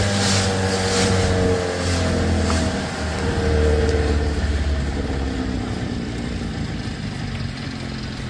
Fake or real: real